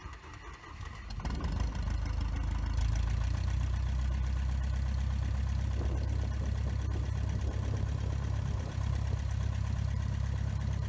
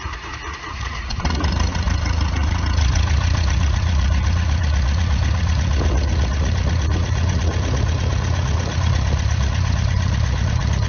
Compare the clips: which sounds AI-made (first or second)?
second